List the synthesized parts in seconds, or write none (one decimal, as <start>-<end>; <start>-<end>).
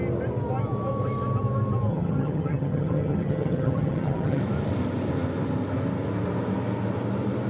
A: 1.9-4.4